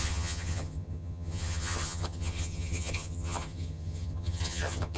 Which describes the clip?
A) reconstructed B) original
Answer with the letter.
A